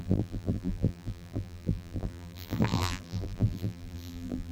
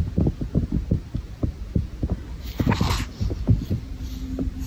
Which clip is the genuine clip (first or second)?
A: second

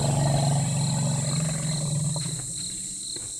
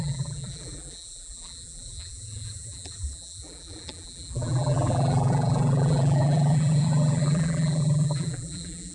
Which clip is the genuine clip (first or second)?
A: first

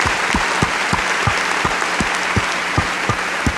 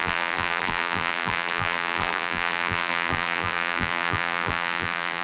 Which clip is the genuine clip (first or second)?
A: first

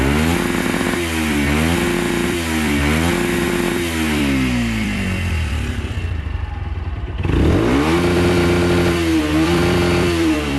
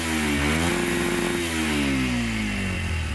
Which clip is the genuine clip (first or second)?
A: second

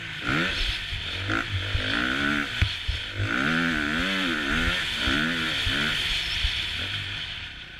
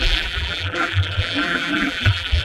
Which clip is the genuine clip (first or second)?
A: first